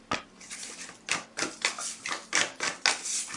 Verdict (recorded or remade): recorded